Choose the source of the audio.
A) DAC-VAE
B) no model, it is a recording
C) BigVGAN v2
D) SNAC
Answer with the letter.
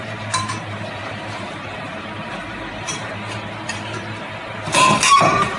C